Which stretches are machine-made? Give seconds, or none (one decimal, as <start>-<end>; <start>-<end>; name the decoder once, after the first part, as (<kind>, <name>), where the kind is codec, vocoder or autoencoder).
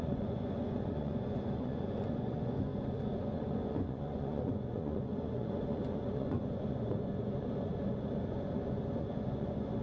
0.0-9.8 (vocoder, Vocos)